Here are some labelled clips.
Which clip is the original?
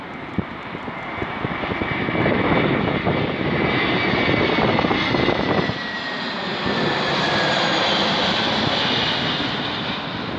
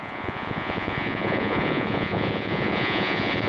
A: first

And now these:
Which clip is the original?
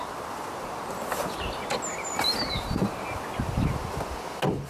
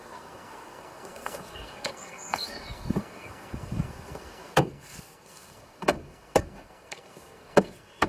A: first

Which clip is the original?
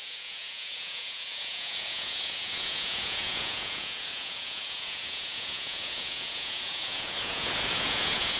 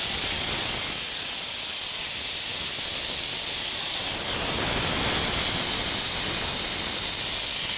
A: second